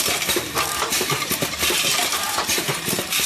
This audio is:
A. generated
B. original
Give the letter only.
A